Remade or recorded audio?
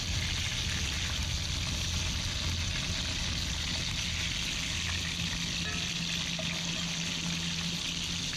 recorded